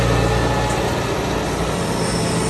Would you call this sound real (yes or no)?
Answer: yes